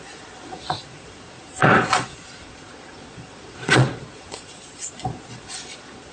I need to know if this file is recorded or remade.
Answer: remade